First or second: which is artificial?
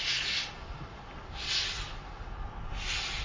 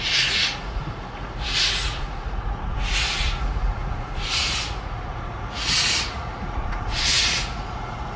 second